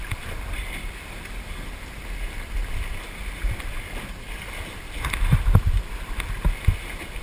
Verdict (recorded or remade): recorded